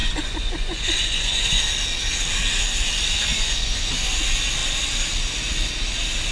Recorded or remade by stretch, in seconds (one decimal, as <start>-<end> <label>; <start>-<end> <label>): 0.0-1.6 remade; 1.6-3.3 recorded; 3.3-3.9 remade; 3.9-6.3 recorded